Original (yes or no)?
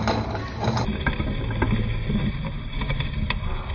yes